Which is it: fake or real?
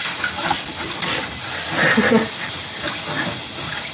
real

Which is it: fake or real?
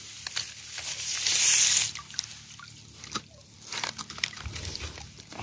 real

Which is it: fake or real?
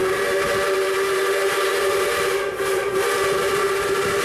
real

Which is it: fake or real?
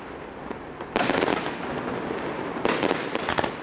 real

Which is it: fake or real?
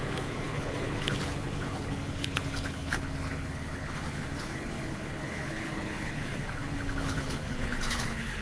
fake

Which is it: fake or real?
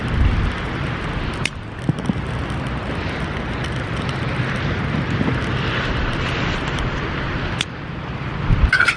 real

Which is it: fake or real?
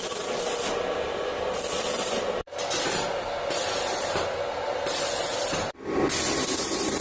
real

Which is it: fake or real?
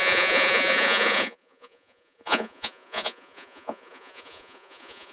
fake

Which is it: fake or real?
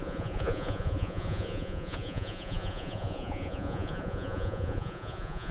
fake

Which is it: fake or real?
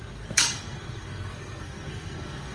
fake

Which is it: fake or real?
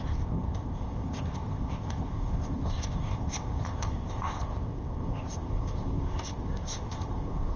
fake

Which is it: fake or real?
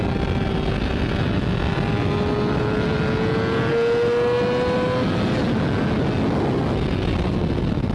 real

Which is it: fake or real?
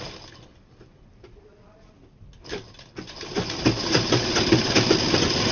real